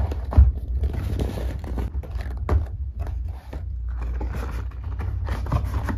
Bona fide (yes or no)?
no